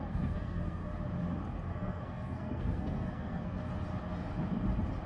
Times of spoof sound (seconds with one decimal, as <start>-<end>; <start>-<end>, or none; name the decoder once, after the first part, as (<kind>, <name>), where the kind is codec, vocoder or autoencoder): 0.0-0.8 (codec, SNAC); 1.7-3.6